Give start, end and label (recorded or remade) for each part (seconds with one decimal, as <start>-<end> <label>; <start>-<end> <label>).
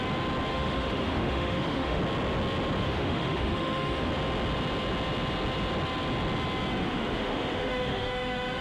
0.0-0.5 recorded; 0.5-2.0 remade; 2.0-2.8 recorded; 2.8-4.1 remade; 4.1-6.8 recorded; 6.8-8.6 remade